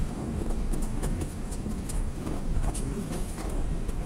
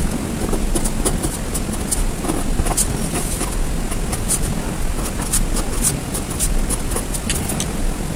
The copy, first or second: first